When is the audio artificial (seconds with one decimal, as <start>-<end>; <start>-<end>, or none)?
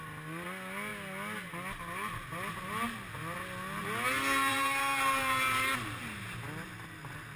4.5-5.8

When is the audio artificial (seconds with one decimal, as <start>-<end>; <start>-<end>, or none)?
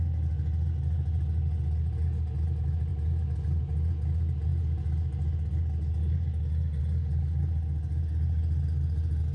none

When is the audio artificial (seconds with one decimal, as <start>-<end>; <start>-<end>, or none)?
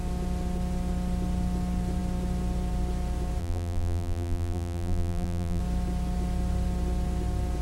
3.4-5.6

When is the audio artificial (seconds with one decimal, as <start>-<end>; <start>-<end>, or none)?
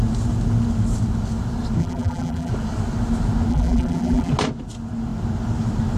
1.8-2.5; 3.5-4.3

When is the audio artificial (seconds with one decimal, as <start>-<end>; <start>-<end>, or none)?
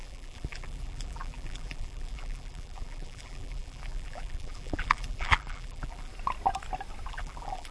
0.0-6.1; 7.1-7.7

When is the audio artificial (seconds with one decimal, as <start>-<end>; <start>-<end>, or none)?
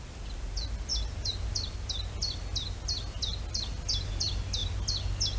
none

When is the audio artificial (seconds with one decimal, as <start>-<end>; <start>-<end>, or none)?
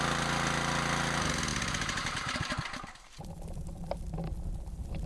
1.5-4.0